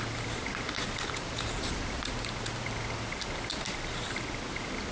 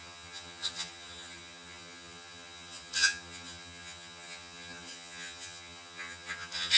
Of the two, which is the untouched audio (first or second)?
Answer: first